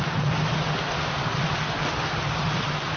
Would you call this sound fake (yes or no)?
no